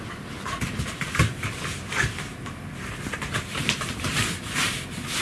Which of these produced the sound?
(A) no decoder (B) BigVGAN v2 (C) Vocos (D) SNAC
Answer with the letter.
B